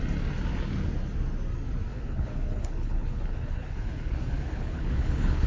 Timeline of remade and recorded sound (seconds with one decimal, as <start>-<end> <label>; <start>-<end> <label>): 0.0-1.9 recorded; 1.9-5.5 remade